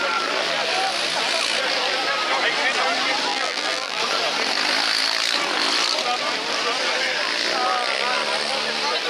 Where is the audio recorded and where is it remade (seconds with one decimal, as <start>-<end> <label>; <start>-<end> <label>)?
0.0-3.3 recorded; 3.3-4.0 remade; 4.0-9.1 recorded